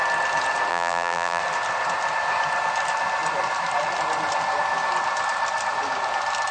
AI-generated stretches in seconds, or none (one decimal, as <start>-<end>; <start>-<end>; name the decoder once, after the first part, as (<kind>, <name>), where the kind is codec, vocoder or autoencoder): 0.7-1.4 (vocoder, BigVGAN v2)